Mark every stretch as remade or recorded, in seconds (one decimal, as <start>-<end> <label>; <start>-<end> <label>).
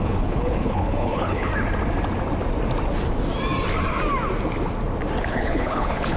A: 0.0-1.5 remade; 1.5-5.2 recorded; 5.2-6.2 remade